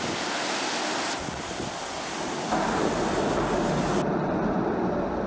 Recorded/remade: recorded